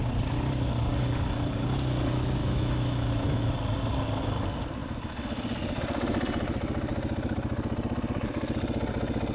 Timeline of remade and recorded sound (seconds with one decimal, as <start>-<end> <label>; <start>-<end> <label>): 0.0-2.4 recorded; 2.4-3.5 remade; 3.5-9.3 recorded